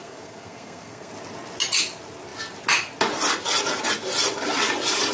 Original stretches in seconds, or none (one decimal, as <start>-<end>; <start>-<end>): 1.1-5.1